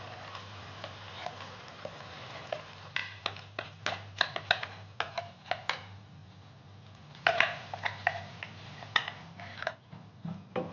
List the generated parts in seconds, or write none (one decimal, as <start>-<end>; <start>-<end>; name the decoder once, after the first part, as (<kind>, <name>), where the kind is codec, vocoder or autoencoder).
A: none